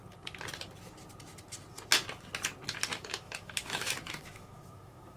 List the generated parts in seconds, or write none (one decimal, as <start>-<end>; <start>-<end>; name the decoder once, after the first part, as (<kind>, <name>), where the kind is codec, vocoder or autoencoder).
2.9-5.2 (autoencoder, DAC-VAE)